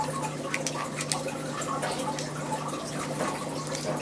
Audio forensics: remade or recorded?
recorded